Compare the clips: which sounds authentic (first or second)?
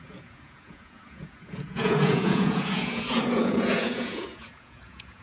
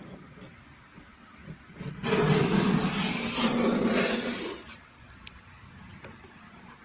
second